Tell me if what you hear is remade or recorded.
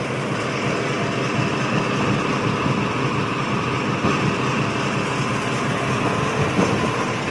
recorded